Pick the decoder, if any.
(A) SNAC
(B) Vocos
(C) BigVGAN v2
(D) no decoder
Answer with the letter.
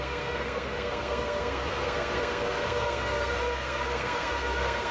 A